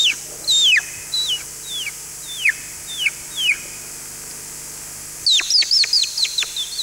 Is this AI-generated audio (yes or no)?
no